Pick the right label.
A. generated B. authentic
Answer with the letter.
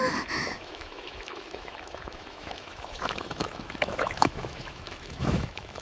A